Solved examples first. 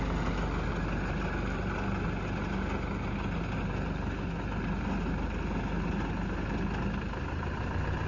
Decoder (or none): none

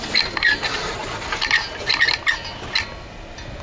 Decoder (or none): none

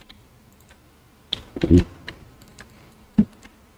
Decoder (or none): vocoder, BigVGAN v2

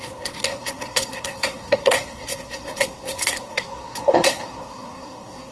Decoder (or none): codec, SNAC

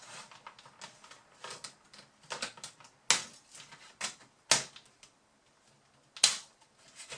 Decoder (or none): none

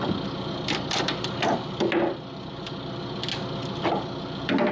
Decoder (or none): none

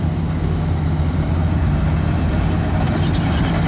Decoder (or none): none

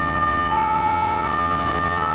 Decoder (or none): vocoder, WaveNeXt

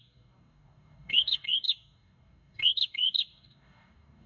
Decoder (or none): codec, DAC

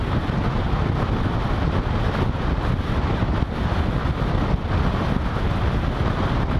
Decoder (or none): none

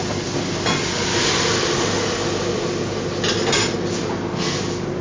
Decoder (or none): none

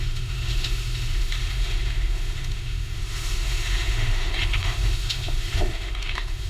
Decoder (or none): autoencoder, DAC-VAE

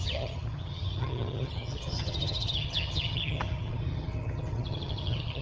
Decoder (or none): vocoder, HiFi-GAN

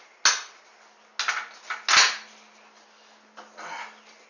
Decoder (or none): none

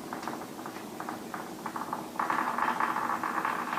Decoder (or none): none